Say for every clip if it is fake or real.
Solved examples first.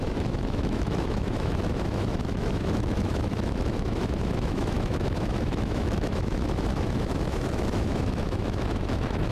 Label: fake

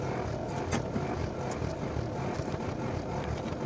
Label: real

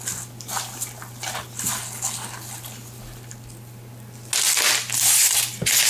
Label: real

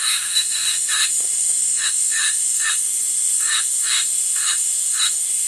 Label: fake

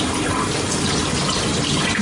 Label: real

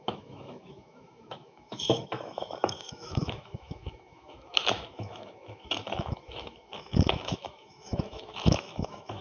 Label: fake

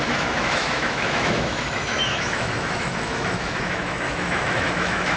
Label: fake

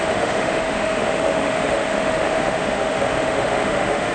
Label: fake